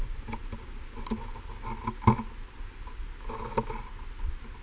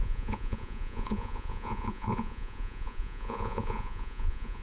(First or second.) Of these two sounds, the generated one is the second